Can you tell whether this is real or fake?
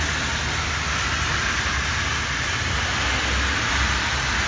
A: real